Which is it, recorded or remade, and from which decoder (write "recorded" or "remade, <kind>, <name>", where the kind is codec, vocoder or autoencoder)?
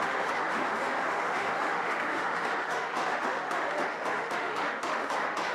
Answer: remade, autoencoder, DAC-VAE